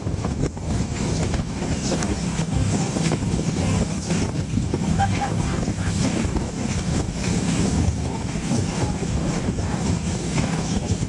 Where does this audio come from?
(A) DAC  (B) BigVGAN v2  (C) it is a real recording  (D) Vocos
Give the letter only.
A